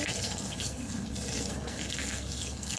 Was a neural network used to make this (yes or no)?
yes